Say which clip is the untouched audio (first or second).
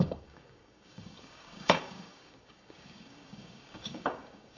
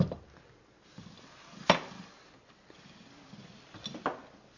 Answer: second